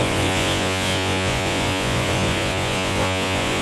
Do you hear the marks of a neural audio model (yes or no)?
yes